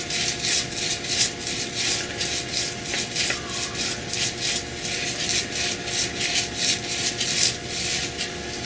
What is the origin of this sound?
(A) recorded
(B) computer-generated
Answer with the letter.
A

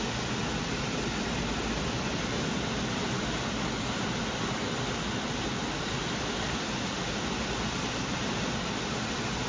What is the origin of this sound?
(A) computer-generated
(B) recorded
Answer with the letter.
B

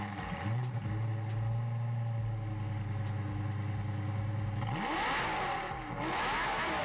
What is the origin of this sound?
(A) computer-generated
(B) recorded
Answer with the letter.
B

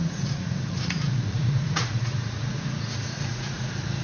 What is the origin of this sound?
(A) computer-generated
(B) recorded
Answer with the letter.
A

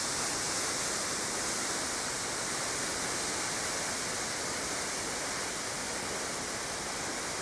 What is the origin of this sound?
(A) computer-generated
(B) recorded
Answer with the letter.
B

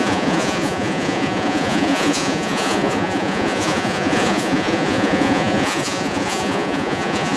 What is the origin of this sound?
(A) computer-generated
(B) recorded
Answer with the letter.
A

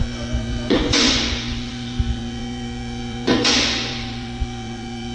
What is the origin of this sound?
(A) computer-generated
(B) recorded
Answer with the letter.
A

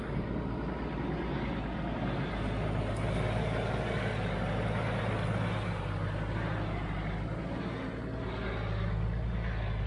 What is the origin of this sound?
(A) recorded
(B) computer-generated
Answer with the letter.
A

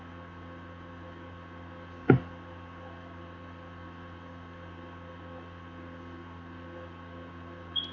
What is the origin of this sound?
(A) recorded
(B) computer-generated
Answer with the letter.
A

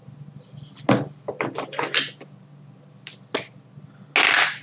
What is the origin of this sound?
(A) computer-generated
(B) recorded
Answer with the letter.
B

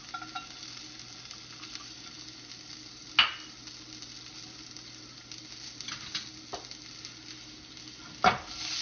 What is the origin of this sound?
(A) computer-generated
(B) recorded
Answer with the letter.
B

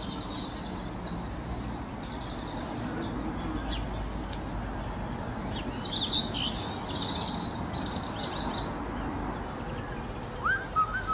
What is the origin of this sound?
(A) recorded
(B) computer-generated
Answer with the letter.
A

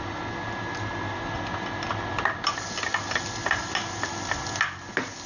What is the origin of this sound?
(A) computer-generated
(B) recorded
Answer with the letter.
B